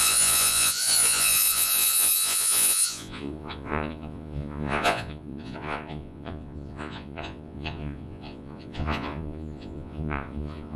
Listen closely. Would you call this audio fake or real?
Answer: fake